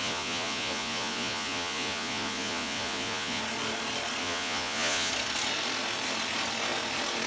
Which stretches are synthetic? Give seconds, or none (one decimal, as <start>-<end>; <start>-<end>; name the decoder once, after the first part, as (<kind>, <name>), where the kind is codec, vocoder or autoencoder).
0.0-3.4 (vocoder, Vocos); 4.2-5.1